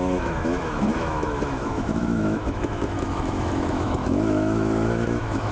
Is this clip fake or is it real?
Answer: fake